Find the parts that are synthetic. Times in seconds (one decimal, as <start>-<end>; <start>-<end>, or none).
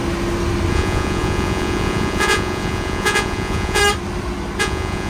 0.7-3.8; 4.6-5.1